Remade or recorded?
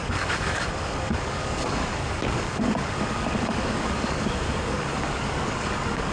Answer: remade